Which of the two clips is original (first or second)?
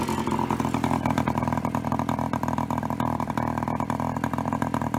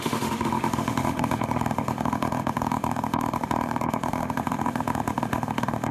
first